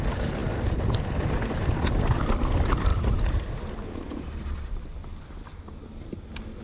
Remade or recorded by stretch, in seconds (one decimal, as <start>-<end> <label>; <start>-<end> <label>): 0.0-6.6 recorded